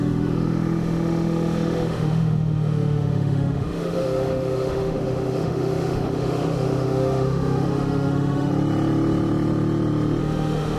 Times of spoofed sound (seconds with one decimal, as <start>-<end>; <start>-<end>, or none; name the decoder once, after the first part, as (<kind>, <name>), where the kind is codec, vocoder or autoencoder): 0.0-8.5 (autoencoder, DAC-VAE); 10.2-10.8